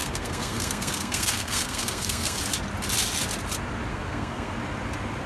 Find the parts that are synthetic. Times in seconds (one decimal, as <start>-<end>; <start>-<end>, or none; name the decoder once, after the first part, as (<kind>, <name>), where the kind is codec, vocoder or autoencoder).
0.0-2.4 (codec, SNAC); 3.9-4.5